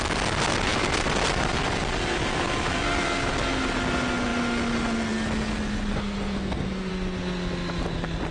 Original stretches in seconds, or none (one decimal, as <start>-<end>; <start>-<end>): 0.0-5.9; 6.9-8.3